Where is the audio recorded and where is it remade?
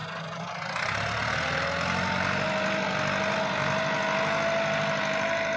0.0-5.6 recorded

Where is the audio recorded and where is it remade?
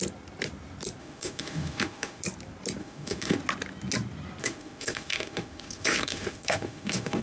0.0-1.0 recorded; 1.0-2.2 remade; 2.2-2.8 recorded; 2.8-3.4 remade; 3.4-4.4 recorded; 4.4-7.2 remade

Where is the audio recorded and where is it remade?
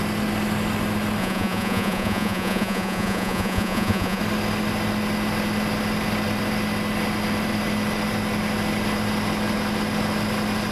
0.0-1.2 recorded; 1.2-4.2 remade; 4.2-10.7 recorded